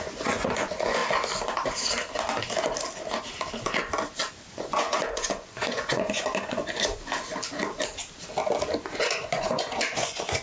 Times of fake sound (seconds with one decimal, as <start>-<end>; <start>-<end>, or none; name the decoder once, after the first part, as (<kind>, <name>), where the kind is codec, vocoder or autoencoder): 0.0-1.0 (vocoder, Vocos); 4.5-6.6; 9.0-10.4